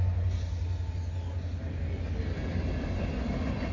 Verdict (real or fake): real